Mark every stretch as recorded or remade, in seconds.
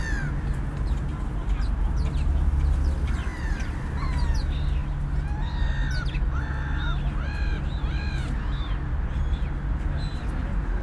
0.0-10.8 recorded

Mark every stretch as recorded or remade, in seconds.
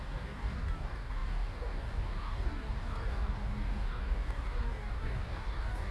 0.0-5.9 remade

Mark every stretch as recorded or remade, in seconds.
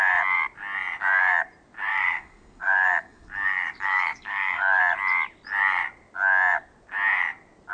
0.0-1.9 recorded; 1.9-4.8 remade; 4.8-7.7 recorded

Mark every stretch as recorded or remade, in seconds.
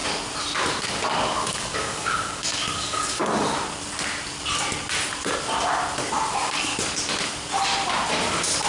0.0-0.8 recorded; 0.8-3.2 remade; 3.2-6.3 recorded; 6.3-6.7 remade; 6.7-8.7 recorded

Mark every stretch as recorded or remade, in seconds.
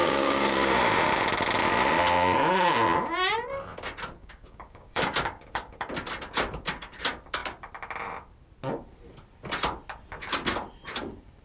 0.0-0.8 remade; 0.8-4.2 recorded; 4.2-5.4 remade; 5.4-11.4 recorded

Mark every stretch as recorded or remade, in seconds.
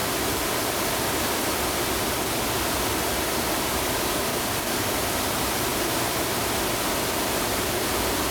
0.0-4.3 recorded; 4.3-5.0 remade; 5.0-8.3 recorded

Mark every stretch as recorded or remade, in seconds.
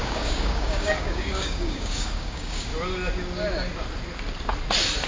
0.0-2.7 remade; 2.7-5.1 recorded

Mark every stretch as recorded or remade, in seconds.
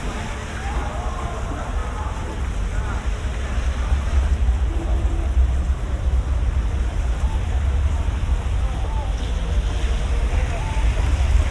0.0-11.5 recorded